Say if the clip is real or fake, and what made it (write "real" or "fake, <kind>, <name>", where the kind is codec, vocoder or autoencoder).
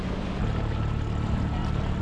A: real